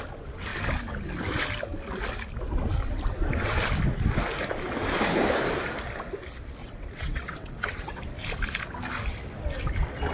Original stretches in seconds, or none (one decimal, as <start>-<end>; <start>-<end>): 0.0-6.6; 8.0-10.1